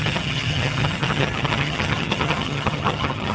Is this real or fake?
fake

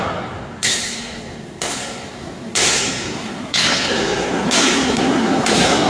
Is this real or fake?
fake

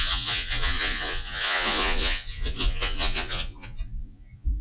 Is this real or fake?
fake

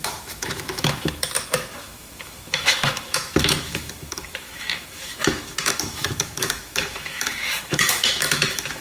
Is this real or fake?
fake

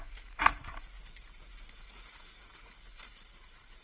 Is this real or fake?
real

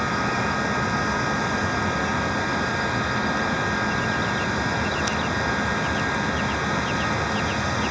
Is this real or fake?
real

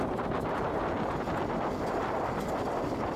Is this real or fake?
real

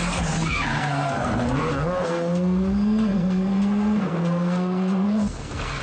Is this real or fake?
fake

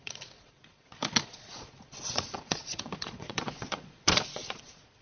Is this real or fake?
fake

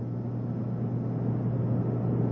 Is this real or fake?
real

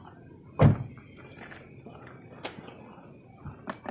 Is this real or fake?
real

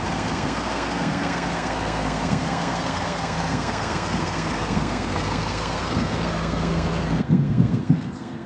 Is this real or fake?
fake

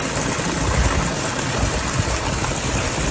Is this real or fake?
real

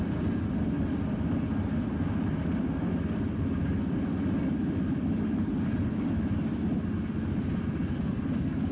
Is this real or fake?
real